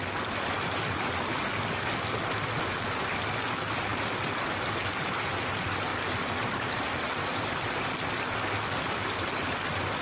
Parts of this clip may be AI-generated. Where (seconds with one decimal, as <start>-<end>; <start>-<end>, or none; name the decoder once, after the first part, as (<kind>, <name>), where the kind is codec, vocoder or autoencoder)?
none